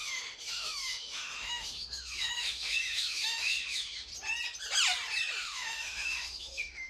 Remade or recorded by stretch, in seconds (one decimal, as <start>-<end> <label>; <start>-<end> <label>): 0.0-4.1 remade; 4.1-5.4 recorded; 5.4-6.9 remade

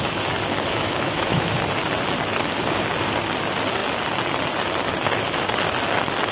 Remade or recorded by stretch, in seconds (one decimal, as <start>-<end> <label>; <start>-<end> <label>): 0.0-0.7 recorded; 0.7-1.5 remade; 1.5-6.3 recorded

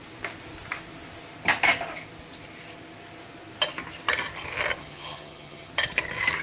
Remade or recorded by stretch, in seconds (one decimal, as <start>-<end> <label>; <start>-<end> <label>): 0.0-4.8 recorded; 4.8-5.7 remade; 5.7-6.4 recorded

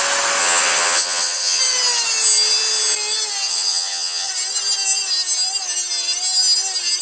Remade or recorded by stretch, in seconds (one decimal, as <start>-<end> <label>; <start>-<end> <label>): 0.0-0.4 recorded; 0.4-1.6 remade; 1.6-3.5 recorded; 3.5-4.3 remade; 4.3-7.0 recorded

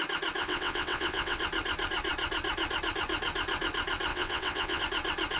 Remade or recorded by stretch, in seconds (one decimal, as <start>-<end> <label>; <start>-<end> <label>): 0.0-0.4 recorded; 0.4-1.4 remade; 1.4-4.1 recorded; 4.1-4.8 remade; 4.8-5.4 recorded

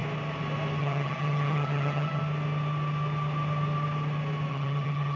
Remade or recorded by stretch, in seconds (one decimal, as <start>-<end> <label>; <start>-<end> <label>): 0.0-0.8 recorded; 0.8-2.2 remade; 2.2-4.5 recorded; 4.5-5.2 remade

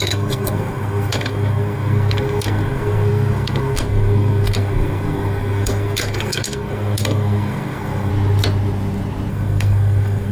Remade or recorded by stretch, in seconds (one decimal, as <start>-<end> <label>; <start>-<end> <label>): 0.0-8.1 remade; 8.1-9.3 recorded; 9.3-10.3 remade

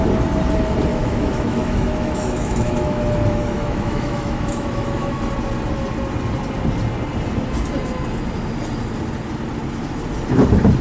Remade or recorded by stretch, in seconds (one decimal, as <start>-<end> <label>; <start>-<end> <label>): 0.0-0.9 recorded; 0.9-5.2 remade; 5.2-10.8 recorded